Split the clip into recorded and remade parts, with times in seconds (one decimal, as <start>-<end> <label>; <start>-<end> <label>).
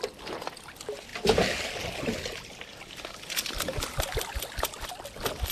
0.0-5.5 recorded